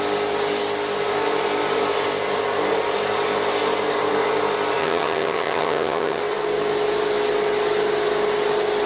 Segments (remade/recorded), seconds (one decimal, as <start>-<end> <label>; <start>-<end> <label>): 0.0-4.8 recorded; 4.8-6.2 remade; 6.2-8.9 recorded